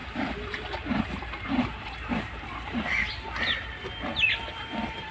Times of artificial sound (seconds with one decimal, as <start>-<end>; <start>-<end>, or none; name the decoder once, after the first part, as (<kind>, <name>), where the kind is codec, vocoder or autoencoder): 0.0-3.1 (vocoder, BigVGAN v2)